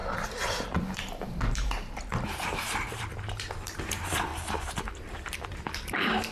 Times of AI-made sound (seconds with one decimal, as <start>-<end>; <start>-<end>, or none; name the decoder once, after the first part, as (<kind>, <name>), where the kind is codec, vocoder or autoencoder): 0.0-4.3 (vocoder, BigVGAN v2); 4.8-6.3